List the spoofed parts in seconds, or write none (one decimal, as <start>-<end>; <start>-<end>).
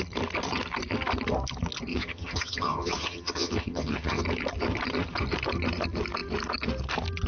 1.9-4.2